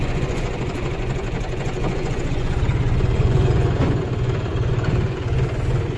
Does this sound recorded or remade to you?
remade